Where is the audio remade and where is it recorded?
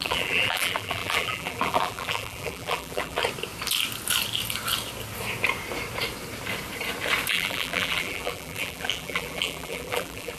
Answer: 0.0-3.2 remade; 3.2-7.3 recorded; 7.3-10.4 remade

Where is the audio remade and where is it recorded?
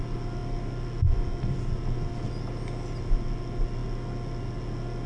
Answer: 0.0-5.1 recorded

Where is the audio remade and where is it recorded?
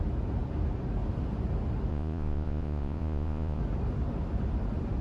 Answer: 0.0-1.9 recorded; 1.9-3.6 remade; 3.6-5.0 recorded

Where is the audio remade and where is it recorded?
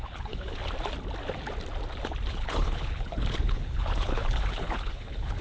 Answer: 0.0-0.6 remade; 0.6-2.3 recorded; 2.3-5.4 remade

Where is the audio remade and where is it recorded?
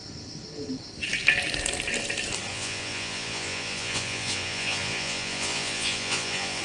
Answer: 0.0-2.5 recorded; 2.5-6.6 remade